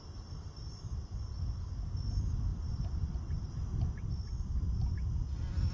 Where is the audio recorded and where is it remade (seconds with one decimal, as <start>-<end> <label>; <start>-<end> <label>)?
0.0-2.5 recorded; 2.5-3.5 remade; 3.5-5.7 recorded